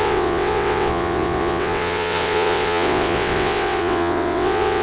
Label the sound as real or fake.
fake